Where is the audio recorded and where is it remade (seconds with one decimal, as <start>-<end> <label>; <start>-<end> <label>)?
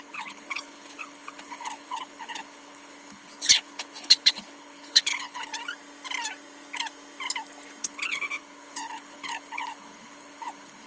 0.0-5.5 remade; 5.5-7.8 recorded; 7.8-10.9 remade